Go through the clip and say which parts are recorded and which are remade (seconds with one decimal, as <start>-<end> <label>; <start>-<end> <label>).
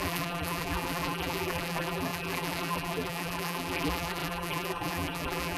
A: 0.0-5.6 remade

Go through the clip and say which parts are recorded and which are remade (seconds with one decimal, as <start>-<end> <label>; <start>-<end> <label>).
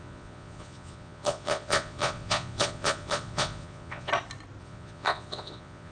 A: 0.0-4.1 remade; 4.1-4.6 recorded; 4.6-5.9 remade